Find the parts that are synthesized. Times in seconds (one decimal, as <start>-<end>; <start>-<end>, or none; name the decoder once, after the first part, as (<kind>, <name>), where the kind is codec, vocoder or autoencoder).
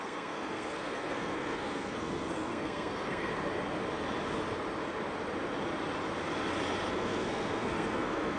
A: 0.0-3.3 (codec, SNAC); 6.9-8.4